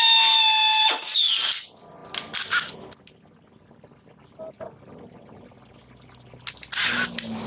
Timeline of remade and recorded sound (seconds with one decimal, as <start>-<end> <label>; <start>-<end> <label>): 0.0-7.5 recorded